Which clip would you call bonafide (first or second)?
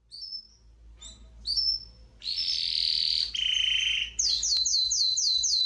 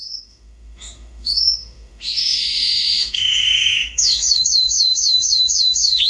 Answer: first